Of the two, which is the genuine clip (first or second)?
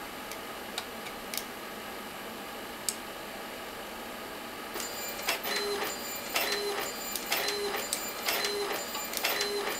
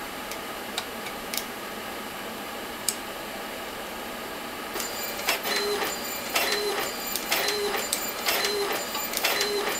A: first